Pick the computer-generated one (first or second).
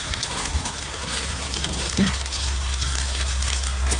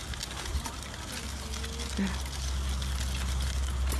first